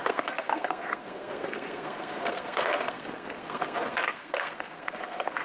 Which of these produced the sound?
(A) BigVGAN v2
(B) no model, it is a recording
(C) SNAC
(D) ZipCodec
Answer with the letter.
C